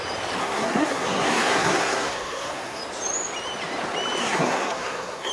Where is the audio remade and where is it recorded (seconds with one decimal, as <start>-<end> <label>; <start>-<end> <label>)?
0.0-0.4 recorded; 0.4-2.8 remade; 2.8-4.2 recorded; 4.2-5.3 remade